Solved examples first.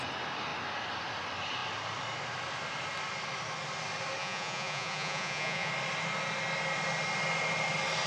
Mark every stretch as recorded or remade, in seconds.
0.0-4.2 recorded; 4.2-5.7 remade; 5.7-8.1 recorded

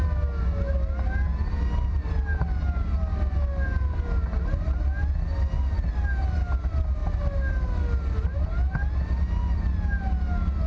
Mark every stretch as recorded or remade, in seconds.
0.0-10.7 recorded

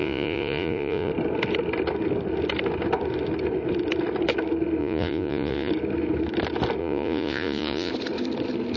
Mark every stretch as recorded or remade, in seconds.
0.0-1.1 remade; 1.1-4.8 recorded; 4.8-5.7 remade; 5.7-6.8 recorded; 6.8-7.9 remade; 7.9-8.8 recorded